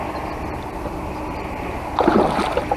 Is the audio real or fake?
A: real